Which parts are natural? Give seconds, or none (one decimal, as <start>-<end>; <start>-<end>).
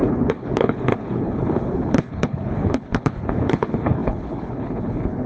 none